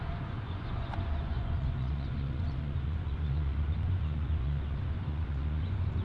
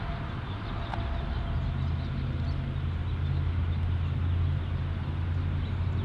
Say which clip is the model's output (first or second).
first